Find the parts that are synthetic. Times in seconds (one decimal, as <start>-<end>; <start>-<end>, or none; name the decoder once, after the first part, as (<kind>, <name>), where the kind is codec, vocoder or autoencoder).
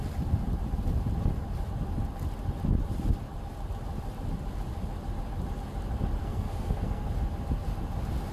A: 6.2-7.1 (codec, SNAC)